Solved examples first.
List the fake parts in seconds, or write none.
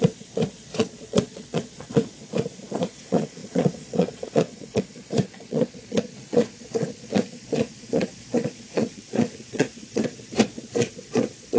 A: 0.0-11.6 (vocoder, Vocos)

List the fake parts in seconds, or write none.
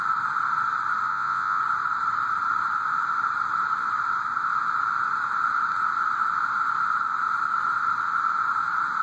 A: 1.1-1.6 (vocoder, Vocos)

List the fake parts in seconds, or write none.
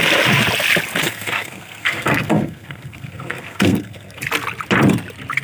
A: 1.0-4.2 (codec, SNAC)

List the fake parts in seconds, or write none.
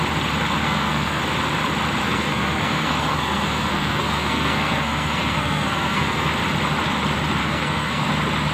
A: 0.6-1.2 (codec, SNAC); 2.0-6.3; 7.4-8.1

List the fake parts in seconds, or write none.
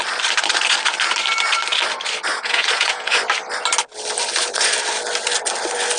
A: 2.3-3.2 (vocoder, Vocos)